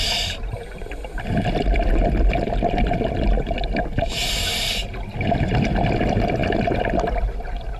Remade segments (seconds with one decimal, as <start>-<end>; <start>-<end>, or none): none